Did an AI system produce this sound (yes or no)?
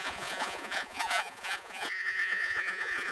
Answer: yes